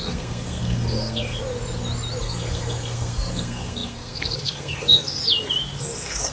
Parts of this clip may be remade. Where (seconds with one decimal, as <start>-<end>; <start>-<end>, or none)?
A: 0.0-1.4; 2.2-5.2; 5.8-6.3